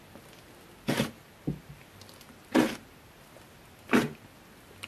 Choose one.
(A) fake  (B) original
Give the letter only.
B